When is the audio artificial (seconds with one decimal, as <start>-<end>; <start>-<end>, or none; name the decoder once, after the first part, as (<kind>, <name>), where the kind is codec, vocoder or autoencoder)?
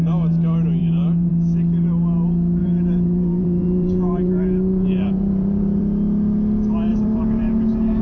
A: 0.8-1.3 (vocoder, BigVGAN v2); 2.6-5.8; 6.9-8.0